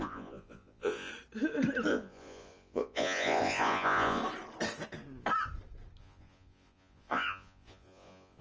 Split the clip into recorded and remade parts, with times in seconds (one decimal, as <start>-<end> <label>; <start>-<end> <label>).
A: 0.0-1.1 remade; 1.1-1.9 recorded; 1.9-4.2 remade; 4.2-6.0 recorded; 6.0-8.4 remade